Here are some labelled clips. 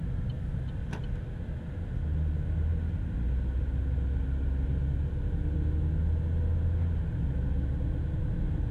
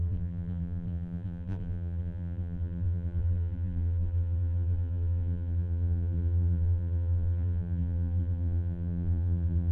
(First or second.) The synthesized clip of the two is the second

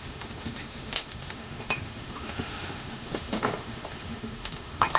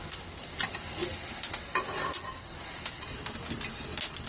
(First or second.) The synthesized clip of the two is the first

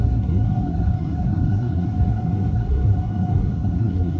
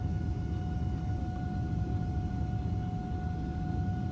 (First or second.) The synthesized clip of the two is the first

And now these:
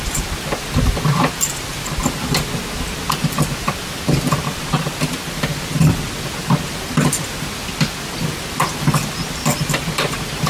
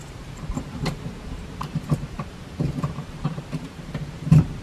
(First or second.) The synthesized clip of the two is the second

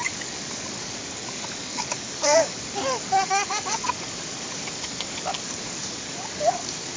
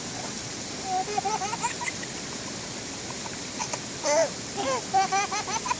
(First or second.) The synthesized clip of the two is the first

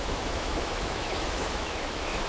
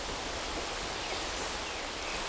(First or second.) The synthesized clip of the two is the first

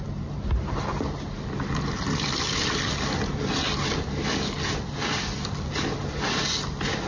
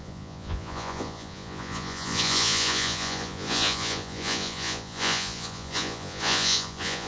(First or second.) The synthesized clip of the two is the second